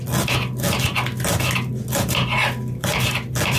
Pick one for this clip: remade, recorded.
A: recorded